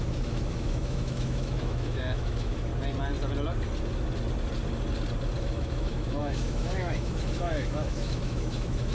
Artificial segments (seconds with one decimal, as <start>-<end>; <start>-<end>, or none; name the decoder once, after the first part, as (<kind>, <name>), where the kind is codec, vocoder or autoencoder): 0.0-2.7 (autoencoder, DAC-VAE); 5.4-8.9